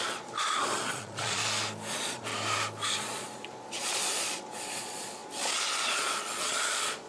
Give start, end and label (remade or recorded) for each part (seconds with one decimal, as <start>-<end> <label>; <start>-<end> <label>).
0.0-1.4 remade; 1.4-1.9 recorded; 1.9-2.3 remade; 2.3-3.0 recorded; 3.0-7.1 remade